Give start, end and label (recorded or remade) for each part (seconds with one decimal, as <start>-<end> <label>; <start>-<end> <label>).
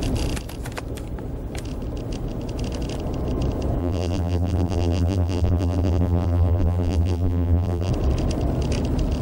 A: 0.0-3.8 recorded; 3.8-7.9 remade; 7.9-9.2 recorded